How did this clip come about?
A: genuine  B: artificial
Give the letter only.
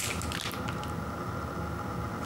A